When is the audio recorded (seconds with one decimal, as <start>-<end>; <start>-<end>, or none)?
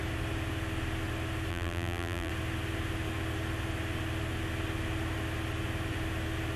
0.0-1.5; 2.3-6.6